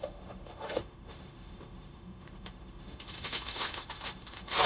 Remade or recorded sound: remade